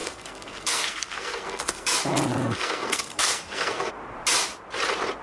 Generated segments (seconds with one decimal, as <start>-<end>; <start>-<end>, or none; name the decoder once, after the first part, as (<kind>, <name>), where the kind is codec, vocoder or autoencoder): 0.0-2.0 (codec, SNAC); 2.4-3.9